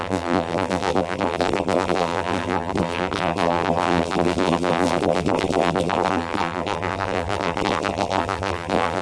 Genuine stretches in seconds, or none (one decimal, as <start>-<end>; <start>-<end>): none